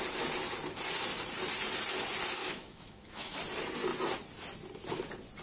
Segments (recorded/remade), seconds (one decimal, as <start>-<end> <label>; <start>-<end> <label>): 0.0-2.4 recorded; 2.4-3.4 remade; 3.4-5.4 recorded